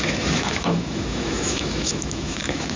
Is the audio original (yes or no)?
no